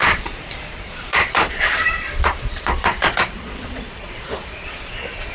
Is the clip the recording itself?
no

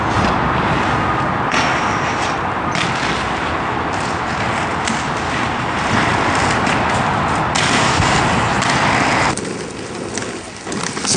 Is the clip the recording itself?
yes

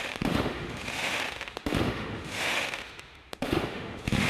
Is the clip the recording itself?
no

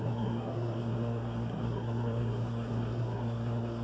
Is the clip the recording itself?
no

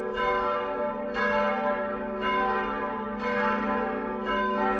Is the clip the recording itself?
no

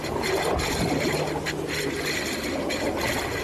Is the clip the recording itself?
yes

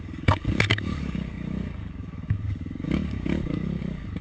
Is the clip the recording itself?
no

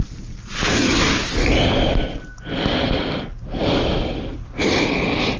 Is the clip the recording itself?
yes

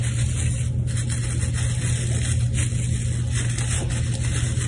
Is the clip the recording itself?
yes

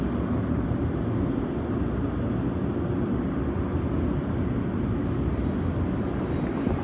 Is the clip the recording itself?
yes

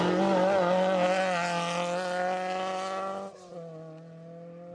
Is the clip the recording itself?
yes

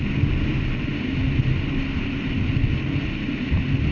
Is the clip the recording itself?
yes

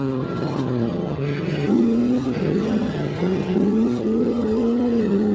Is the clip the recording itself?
no